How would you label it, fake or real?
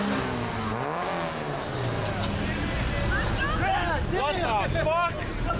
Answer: real